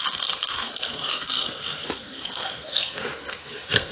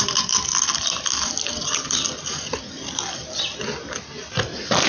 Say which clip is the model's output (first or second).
first